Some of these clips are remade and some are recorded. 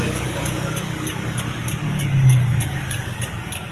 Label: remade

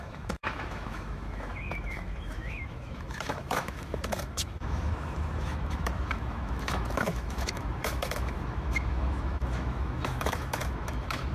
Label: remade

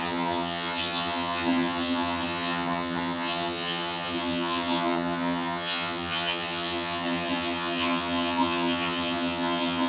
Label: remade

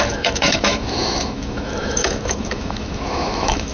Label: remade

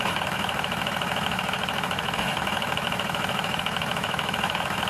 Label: remade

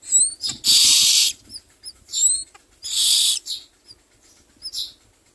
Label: recorded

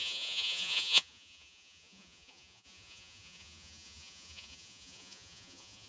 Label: remade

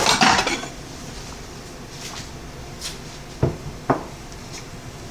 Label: recorded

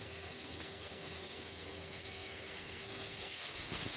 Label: remade